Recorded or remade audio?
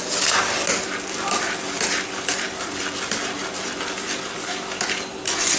recorded